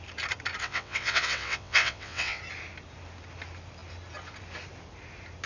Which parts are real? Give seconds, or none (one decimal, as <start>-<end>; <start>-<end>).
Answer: 0.0-0.6; 2.4-5.5